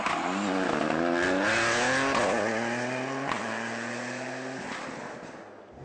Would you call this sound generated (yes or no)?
no